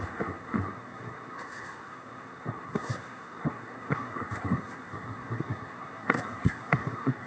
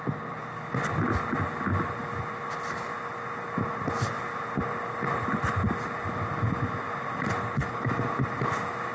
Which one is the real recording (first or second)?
second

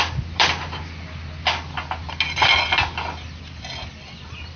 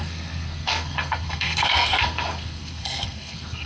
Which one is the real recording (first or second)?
first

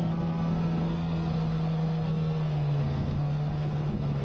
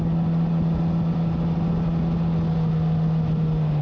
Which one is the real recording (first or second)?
second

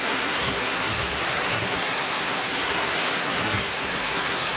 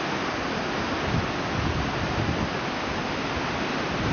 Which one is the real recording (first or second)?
second